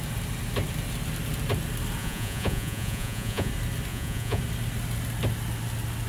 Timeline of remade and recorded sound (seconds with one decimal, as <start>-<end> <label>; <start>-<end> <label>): 0.0-2.0 recorded; 2.0-3.5 remade; 3.5-3.9 recorded; 3.9-4.4 remade; 4.4-6.1 recorded